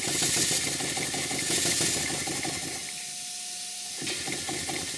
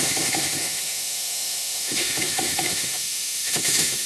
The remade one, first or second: second